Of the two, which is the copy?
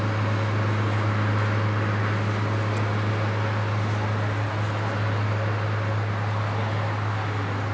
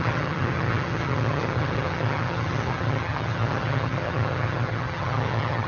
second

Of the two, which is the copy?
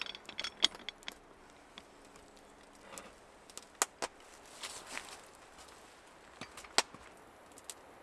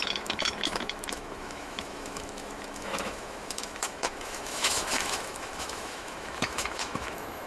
second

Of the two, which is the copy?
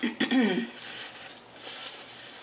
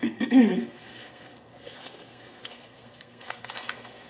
second